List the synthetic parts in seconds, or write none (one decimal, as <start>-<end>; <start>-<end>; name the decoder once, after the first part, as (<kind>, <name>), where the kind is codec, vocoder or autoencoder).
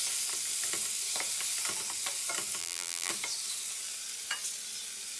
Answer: 2.6-3.1 (vocoder, BigVGAN v2)